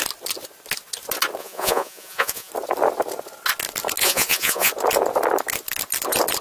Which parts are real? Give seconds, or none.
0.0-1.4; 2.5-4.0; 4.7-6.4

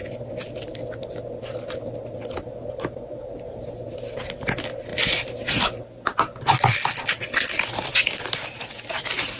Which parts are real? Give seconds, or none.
0.0-9.4